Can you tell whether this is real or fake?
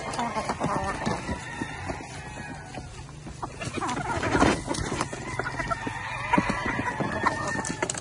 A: real